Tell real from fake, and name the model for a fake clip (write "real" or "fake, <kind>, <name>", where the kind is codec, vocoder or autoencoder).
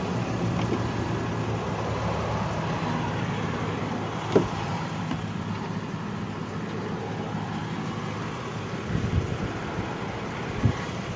real